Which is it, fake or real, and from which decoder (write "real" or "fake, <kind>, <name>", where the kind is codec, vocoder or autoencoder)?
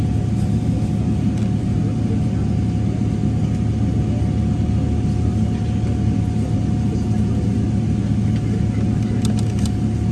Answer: real